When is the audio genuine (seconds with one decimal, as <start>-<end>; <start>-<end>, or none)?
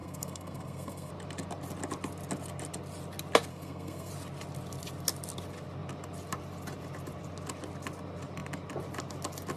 1.1-3.5; 4.1-9.6